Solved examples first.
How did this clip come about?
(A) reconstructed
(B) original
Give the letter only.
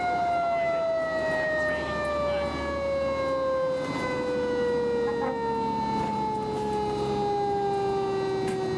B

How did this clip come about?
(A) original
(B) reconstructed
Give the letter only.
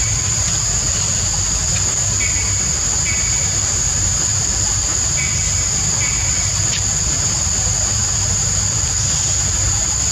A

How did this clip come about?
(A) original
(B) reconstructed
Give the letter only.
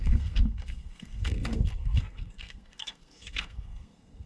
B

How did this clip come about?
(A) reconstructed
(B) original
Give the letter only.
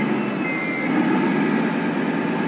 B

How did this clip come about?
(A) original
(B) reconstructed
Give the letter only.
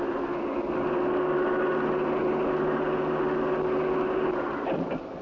A